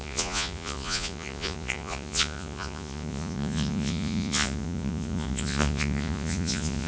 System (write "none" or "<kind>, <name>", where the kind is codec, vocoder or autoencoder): vocoder, Vocos